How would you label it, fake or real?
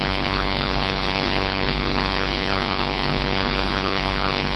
fake